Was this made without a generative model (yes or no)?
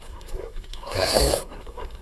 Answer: no